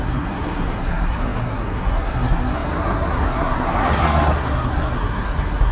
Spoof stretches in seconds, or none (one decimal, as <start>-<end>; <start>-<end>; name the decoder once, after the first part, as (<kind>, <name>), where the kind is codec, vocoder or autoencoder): 0.0-5.7 (codec, SNAC)